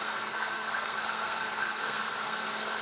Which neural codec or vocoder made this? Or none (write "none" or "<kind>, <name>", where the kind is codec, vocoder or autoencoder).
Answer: codec, SNAC